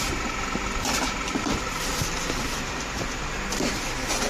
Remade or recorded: recorded